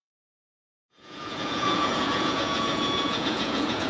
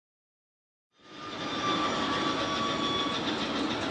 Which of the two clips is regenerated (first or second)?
first